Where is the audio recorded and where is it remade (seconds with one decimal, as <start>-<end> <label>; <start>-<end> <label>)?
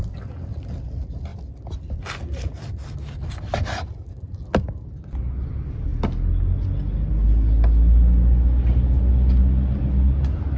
0.0-1.3 recorded; 1.3-2.5 remade; 2.5-10.6 recorded